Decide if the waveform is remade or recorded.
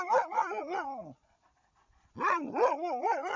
remade